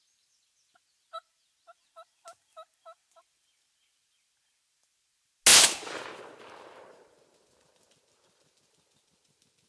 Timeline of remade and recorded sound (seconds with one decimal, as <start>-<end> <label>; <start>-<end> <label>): 0.0-9.7 recorded